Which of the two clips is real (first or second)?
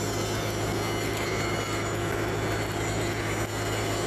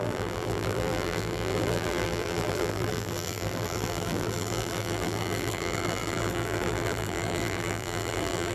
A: first